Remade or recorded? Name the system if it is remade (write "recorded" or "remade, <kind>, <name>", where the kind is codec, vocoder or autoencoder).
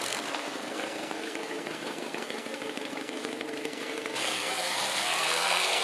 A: remade, codec, SNAC